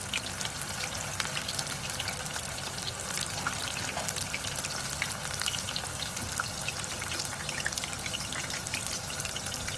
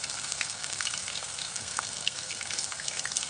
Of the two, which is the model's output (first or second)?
second